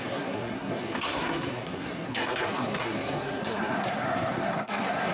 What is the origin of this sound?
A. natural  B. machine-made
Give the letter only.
B